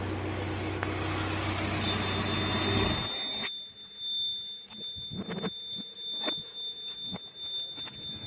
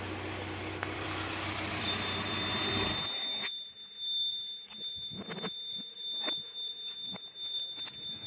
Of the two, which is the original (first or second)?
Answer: first